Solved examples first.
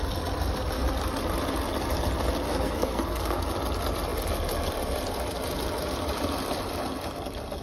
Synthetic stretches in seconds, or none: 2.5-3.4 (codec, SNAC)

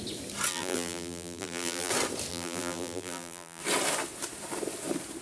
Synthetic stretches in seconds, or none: 0.5-1.9 (vocoder, BigVGAN v2); 2.3-3.6

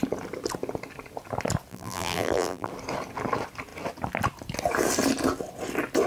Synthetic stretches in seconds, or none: 1.7-2.7 (vocoder, BigVGAN v2)

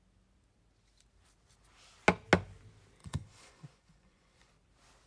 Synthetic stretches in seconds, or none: 3.0-4.5 (vocoder, Vocos)